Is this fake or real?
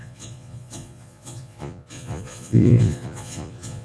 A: fake